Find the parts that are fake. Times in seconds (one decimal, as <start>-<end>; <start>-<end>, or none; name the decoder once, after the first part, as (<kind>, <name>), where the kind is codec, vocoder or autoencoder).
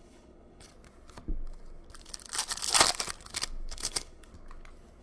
0.0-0.7 (codec, HILCodec); 3.7-4.3